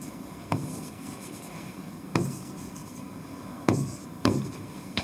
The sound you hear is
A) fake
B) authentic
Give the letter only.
A